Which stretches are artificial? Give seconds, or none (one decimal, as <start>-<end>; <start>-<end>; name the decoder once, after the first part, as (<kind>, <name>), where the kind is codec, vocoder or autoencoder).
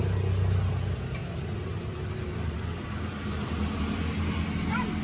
1.2-4.2 (vocoder, BigVGAN v2)